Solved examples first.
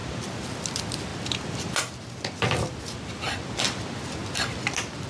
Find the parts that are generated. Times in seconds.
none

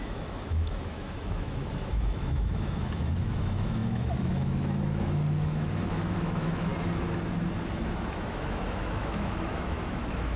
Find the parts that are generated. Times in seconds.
0.0-6.7 (autoencoder, DAC-VAE); 7.7-10.4

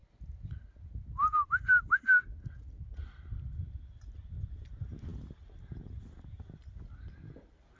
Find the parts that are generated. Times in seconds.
none

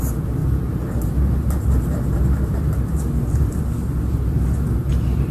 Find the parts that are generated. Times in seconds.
none